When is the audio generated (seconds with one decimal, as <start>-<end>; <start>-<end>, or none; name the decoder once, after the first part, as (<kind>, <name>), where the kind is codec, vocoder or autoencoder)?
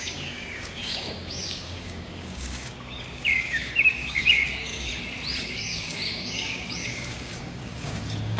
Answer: 0.0-4.9 (codec, DAC); 5.4-8.4